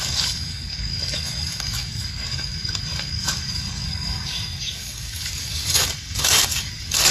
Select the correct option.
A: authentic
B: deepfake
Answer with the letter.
B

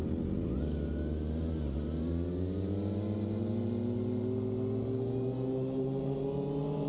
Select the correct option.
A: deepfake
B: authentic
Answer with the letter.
B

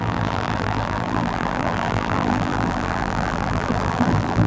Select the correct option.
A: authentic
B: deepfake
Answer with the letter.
B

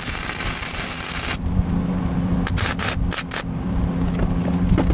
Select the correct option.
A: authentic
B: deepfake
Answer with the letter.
A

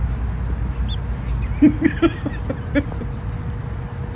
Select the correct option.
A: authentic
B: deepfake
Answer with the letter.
A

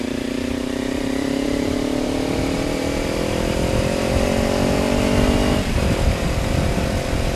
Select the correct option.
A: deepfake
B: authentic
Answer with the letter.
A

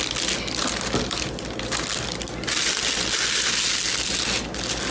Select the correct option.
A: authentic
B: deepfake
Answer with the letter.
A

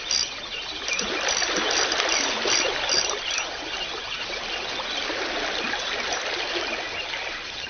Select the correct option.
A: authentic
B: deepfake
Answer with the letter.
A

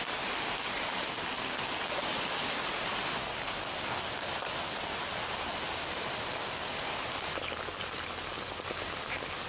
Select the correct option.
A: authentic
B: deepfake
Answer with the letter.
A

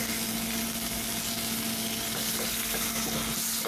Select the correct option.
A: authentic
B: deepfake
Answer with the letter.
A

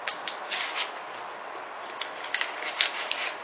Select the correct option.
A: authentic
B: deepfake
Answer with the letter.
A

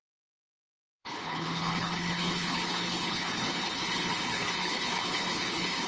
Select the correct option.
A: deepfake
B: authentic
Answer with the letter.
A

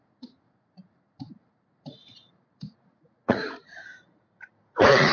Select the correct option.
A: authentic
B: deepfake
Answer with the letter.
B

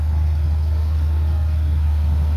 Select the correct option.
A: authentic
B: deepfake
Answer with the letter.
B